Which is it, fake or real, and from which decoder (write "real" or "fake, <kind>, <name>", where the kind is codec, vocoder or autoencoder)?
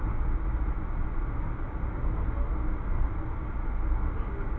real